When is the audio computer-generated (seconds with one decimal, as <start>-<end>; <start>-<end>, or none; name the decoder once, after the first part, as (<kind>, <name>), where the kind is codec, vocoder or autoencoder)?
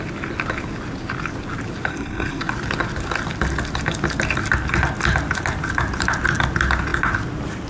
1.9-2.4 (codec, SNAC)